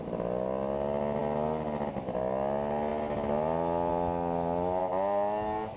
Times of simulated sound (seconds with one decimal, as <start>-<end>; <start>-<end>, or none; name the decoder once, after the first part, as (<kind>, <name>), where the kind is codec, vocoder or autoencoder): none